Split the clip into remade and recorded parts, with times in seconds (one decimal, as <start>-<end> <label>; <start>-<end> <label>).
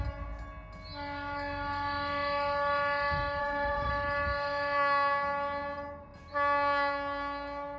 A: 0.0-3.4 recorded; 3.4-3.9 remade; 3.9-7.8 recorded